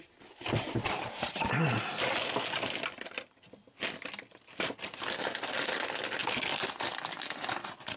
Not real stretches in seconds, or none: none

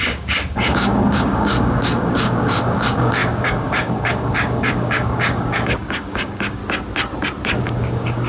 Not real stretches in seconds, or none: 0.0-6.6; 7.6-8.3